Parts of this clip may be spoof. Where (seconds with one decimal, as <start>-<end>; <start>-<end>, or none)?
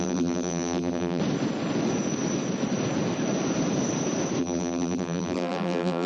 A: 0.0-1.2; 4.4-6.1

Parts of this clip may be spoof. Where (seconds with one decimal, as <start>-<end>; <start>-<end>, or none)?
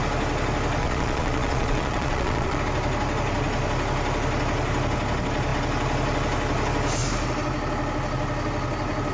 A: 0.8-2.6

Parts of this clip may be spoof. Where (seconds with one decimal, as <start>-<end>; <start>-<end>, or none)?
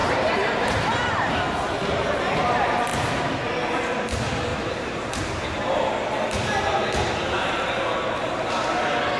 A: 0.0-1.4; 2.9-3.4; 4.5-5.9